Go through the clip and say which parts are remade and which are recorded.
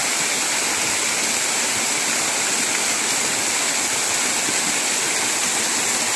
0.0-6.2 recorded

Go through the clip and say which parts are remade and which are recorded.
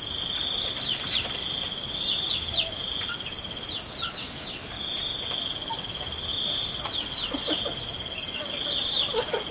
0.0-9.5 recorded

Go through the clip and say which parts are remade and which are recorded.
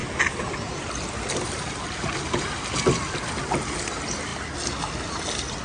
0.0-5.6 recorded